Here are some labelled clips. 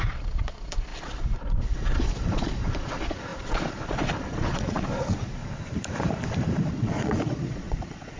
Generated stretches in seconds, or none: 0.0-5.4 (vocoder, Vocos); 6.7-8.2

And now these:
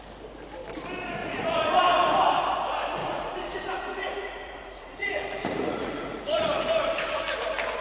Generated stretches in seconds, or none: 1.2-1.8 (vocoder, Vocos); 3.0-7.2

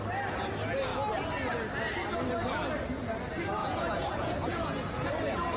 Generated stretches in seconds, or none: 3.6-5.1 (vocoder, Vocos)

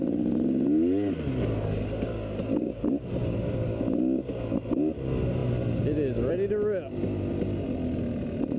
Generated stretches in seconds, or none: none

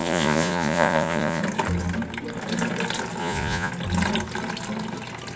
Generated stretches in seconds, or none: 0.0-1.4 (vocoder, Vocos); 3.2-3.7

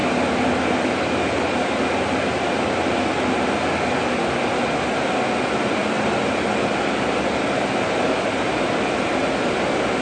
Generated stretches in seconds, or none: none